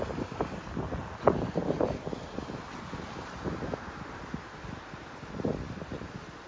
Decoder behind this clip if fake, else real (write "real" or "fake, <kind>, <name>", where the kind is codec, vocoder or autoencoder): real